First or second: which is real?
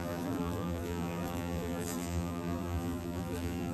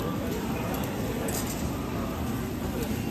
second